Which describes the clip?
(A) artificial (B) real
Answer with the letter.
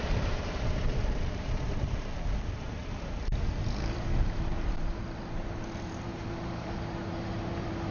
A